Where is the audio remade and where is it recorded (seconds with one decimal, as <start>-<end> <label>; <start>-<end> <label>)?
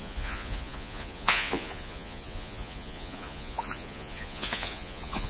0.0-5.3 remade